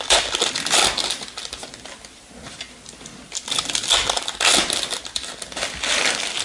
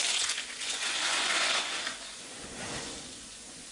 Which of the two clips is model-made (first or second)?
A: second